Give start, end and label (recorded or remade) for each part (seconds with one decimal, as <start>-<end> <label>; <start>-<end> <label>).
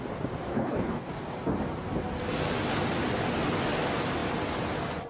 0.0-0.5 recorded; 0.5-1.1 remade; 1.1-5.1 recorded